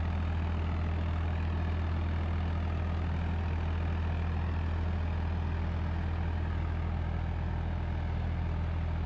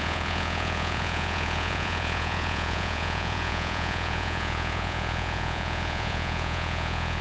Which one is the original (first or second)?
first